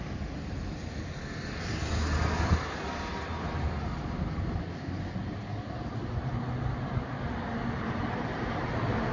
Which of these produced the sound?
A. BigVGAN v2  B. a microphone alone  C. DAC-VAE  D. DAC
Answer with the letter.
B